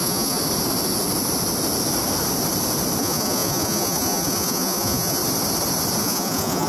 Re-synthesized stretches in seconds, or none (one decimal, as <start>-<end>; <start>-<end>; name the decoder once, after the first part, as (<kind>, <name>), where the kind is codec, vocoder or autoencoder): 0.0-0.4 (vocoder, Vocos); 3.0-5.2; 6.0-6.7